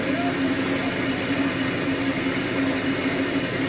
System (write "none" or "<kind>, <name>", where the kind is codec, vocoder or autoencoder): none